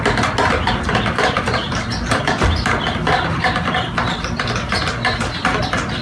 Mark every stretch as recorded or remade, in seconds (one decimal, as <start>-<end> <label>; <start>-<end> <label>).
0.0-1.6 recorded; 1.6-3.7 remade; 3.7-6.0 recorded

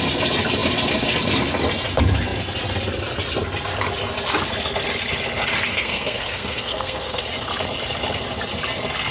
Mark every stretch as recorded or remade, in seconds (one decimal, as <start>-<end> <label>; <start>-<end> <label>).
0.0-5.7 recorded; 5.7-7.2 remade; 7.2-9.1 recorded

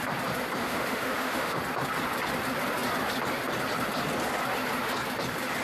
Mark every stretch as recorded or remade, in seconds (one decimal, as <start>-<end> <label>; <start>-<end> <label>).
0.0-0.6 recorded; 0.6-1.6 remade; 1.6-5.6 recorded

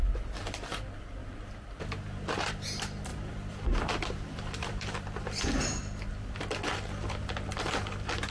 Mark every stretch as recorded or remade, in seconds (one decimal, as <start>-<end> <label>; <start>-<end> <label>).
0.0-1.2 recorded; 1.2-2.5 remade; 2.5-3.1 recorded; 3.1-5.6 remade; 5.6-8.3 recorded